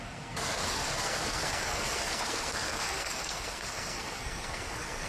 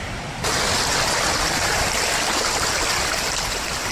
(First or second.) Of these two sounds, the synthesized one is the first